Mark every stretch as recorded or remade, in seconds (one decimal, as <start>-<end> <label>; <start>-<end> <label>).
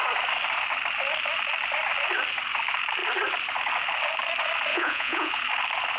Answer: 0.0-4.7 recorded; 4.7-5.3 remade; 5.3-6.0 recorded